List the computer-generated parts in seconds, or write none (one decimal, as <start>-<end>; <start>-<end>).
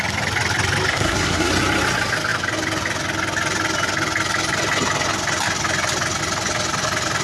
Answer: 0.9-1.5